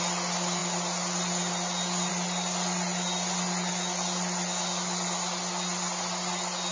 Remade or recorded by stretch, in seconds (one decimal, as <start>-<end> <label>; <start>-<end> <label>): 0.0-6.7 recorded